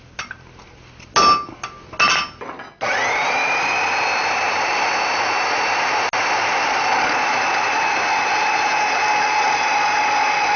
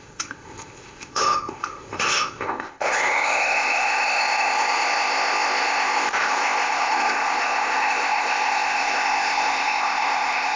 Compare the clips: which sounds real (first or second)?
first